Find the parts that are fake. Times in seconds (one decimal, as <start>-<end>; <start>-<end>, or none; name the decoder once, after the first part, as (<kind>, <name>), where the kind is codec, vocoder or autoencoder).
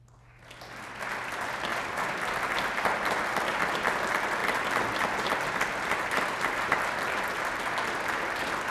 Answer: none